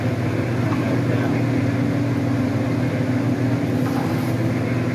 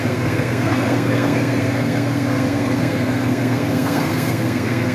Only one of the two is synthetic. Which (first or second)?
second